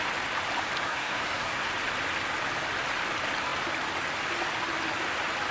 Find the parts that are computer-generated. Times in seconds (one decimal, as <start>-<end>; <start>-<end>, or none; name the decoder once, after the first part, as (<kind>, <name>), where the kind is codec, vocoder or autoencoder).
0.8-1.7 (codec, SNAC)